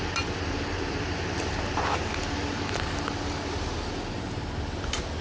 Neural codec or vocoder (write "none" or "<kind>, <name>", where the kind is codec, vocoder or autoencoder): none